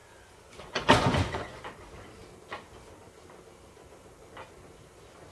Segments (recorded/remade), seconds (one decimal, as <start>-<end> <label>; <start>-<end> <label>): 0.0-1.6 remade; 1.6-5.3 recorded